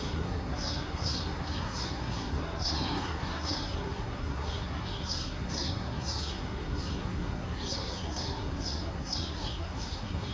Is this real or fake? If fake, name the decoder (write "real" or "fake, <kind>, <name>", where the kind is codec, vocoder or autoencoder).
fake, codec, SNAC